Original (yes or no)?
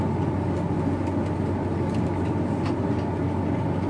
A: yes